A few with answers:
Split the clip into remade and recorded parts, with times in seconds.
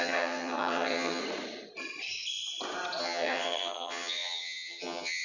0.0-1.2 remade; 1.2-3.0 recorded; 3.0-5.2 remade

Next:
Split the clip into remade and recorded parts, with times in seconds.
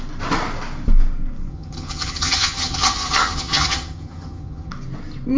0.0-1.5 recorded; 1.5-4.7 remade; 4.7-5.4 recorded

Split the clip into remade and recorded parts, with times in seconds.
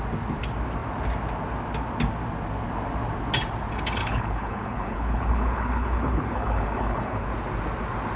0.0-4.0 recorded; 4.0-7.3 remade; 7.3-8.2 recorded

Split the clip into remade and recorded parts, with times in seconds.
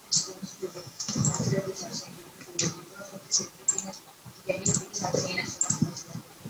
0.0-0.6 recorded; 0.6-1.4 remade; 1.4-6.5 recorded